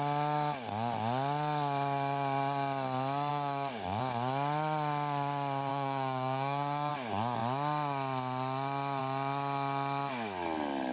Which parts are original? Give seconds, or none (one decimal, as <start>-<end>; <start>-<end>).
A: 0.0-3.3; 4.0-5.7; 6.9-10.9